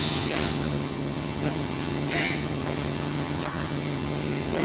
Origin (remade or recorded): remade